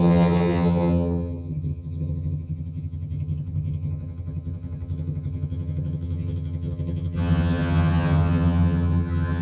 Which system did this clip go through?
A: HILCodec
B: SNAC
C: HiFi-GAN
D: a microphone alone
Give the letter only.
C